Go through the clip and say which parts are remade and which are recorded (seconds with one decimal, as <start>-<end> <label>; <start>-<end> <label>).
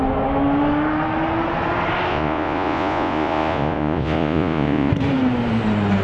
0.0-2.1 recorded; 2.1-4.9 remade; 4.9-6.0 recorded